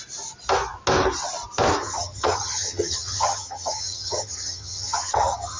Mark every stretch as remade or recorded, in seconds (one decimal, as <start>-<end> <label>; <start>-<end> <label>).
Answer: 0.0-1.8 recorded; 1.8-5.6 remade